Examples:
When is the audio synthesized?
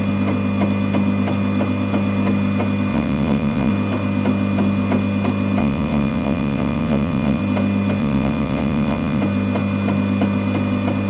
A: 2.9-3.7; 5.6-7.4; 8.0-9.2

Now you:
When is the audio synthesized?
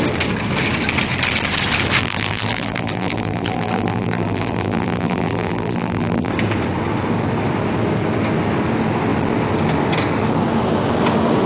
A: 2.0-6.3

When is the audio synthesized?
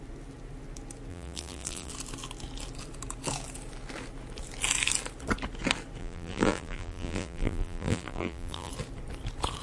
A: 1.1-1.9; 6.0-8.7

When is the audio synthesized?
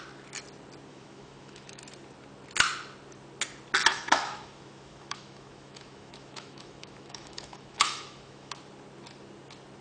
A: 0.9-1.8; 3.9-8.5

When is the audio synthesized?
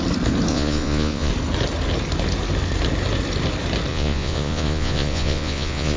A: 0.5-1.3; 3.9-6.0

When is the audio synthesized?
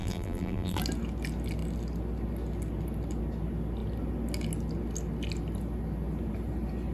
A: 0.0-0.8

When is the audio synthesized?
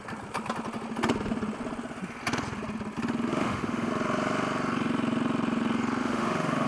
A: 3.3-3.9; 6.0-6.7